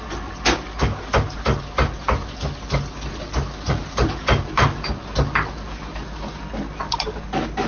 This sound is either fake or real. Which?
real